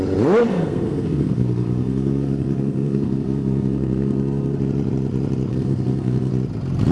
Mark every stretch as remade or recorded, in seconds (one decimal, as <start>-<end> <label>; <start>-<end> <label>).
0.0-0.5 recorded; 0.5-4.6 remade; 4.6-5.5 recorded; 5.5-6.3 remade; 6.3-6.9 recorded

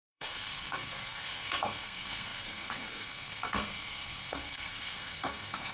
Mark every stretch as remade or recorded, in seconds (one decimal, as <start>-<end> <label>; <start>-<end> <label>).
0.0-5.7 remade

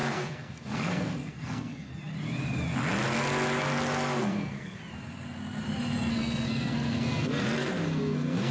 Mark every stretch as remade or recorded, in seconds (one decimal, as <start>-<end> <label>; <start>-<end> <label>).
0.0-1.9 remade; 1.9-4.2 recorded; 4.2-4.8 remade; 4.8-6.1 recorded; 6.1-8.5 remade

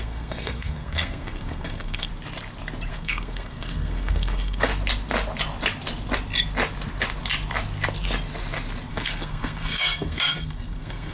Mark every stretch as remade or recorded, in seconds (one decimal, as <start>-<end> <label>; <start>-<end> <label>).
0.0-2.1 remade; 2.1-2.9 recorded; 2.9-4.7 remade; 4.7-8.9 recorded; 8.9-11.1 remade

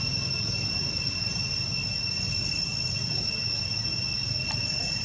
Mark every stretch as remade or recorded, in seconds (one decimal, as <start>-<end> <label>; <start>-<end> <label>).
0.0-5.0 recorded

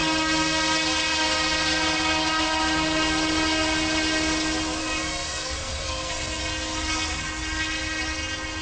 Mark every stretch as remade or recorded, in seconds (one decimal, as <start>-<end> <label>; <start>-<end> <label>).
0.0-4.8 recorded; 4.8-6.4 remade; 6.4-8.6 recorded